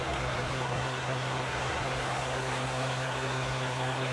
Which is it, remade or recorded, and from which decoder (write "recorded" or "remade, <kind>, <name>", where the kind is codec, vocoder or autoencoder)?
remade, codec, SNAC